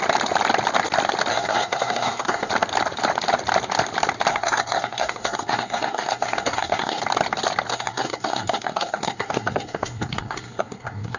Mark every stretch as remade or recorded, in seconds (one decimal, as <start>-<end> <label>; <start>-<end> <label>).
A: 0.0-1.3 recorded; 1.3-2.5 remade; 2.5-4.3 recorded; 4.3-7.0 remade; 7.0-7.7 recorded; 7.7-11.2 remade